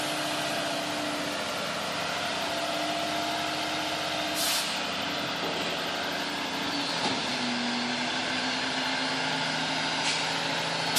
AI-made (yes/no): no